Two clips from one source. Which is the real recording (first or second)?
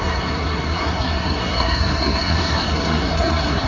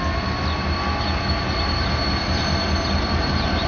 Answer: second